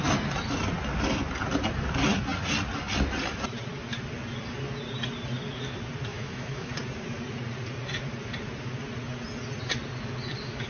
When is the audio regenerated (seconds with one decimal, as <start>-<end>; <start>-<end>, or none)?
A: 6.1-6.7